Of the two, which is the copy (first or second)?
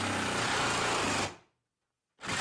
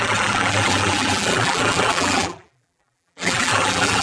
second